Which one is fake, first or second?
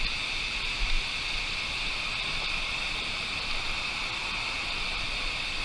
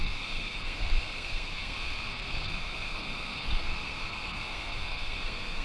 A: second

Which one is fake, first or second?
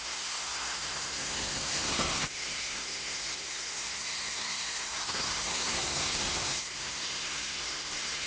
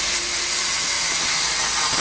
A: first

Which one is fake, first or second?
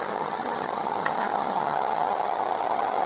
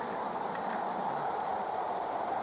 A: first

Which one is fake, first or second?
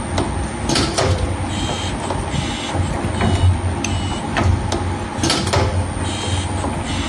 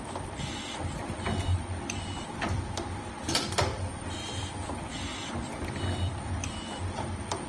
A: second